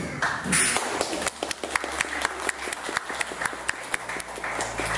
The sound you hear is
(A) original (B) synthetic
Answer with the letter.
A